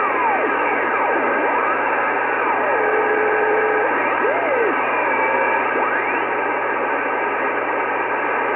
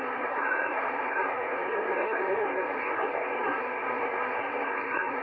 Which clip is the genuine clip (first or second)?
first